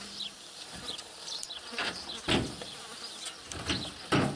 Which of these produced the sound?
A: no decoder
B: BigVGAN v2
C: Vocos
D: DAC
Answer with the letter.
B